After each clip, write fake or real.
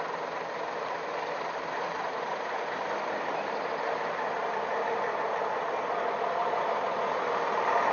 real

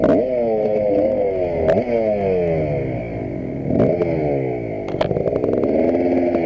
real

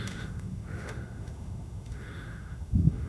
fake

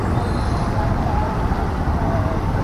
real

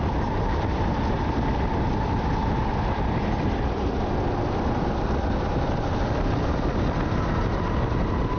real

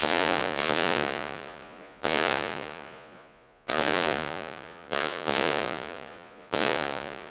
fake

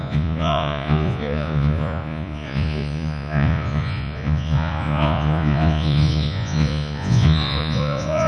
fake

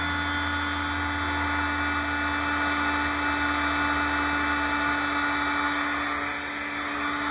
real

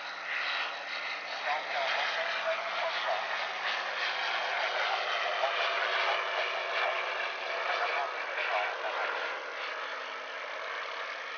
real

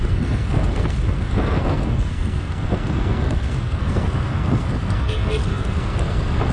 fake